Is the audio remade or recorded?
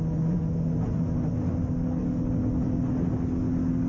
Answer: recorded